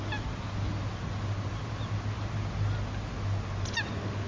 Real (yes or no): yes